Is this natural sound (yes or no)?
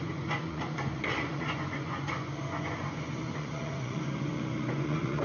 no